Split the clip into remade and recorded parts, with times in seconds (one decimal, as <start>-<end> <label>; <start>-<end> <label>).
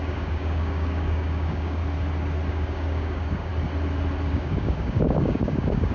0.0-1.8 remade; 1.8-2.5 recorded; 2.5-3.5 remade; 3.5-4.3 recorded; 4.3-5.9 remade